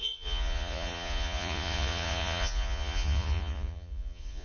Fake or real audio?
fake